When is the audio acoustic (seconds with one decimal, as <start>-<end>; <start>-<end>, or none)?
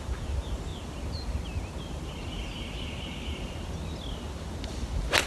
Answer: 0.0-5.3